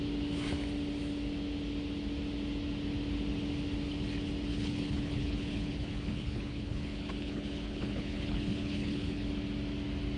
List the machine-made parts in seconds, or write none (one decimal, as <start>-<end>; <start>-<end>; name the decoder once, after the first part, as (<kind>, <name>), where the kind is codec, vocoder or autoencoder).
4.5-9.3 (codec, HILCodec)